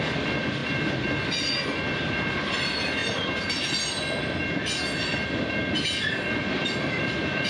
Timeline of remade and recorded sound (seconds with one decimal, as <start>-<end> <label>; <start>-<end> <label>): 0.0-7.5 recorded